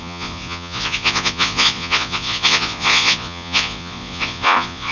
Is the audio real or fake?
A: fake